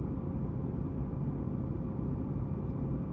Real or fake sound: real